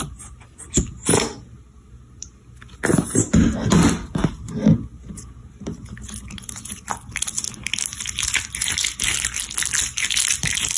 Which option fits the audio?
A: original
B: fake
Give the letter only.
A